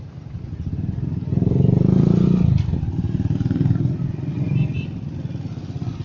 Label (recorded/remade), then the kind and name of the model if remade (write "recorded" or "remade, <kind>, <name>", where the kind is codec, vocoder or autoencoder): recorded